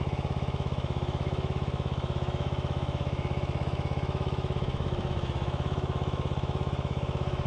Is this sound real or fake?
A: fake